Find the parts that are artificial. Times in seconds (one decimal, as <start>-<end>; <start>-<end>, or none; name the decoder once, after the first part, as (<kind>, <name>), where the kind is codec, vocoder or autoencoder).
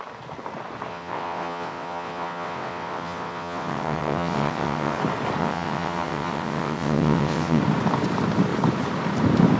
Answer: 0.9-5.0 (vocoder, WaveNeXt); 5.4-7.6